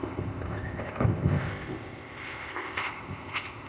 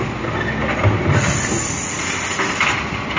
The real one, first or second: second